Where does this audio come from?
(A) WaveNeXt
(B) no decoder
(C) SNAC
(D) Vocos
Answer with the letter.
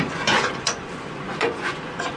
D